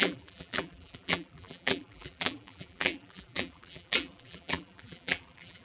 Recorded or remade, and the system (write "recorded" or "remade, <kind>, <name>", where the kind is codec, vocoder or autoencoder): remade, vocoder, BigVGAN v2